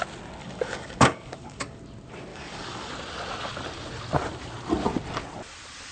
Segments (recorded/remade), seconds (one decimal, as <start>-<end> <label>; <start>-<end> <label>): 0.0-0.4 recorded; 0.4-1.8 remade; 1.8-2.3 recorded; 2.3-2.9 remade; 2.9-5.9 recorded